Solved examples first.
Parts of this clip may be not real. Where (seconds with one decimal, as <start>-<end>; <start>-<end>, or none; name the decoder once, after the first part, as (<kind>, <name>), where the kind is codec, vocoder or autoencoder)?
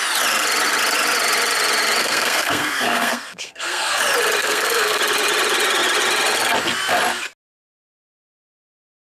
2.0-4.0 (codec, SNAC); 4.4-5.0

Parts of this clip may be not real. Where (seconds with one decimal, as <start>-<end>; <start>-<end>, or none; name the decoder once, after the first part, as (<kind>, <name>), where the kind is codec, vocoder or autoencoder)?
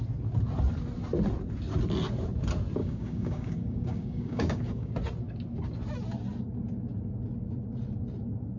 2.8-4.9 (codec, DAC)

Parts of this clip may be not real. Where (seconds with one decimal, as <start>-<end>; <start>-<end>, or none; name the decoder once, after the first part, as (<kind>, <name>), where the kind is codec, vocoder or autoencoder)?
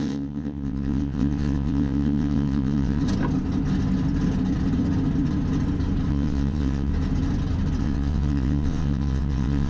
0.0-3.0 (vocoder, WaveNeXt); 6.1-6.9; 7.8-9.7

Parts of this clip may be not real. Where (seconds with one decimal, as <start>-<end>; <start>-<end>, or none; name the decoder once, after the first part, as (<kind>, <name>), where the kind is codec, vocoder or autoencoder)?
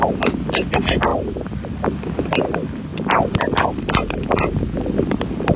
none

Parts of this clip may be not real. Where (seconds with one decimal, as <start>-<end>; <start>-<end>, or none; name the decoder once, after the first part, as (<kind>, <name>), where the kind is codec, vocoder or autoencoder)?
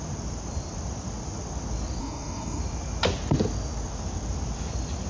2.0-2.6 (codec, DAC)